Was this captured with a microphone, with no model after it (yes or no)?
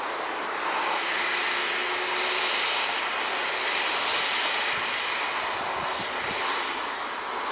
yes